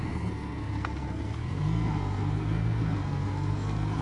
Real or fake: fake